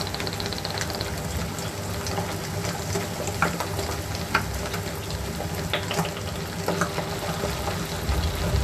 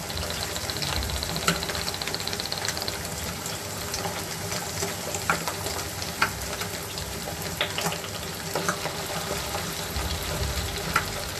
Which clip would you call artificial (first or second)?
second